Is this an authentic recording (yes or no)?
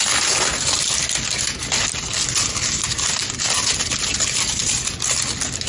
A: yes